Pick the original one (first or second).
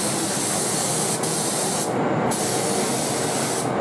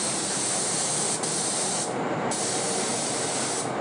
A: first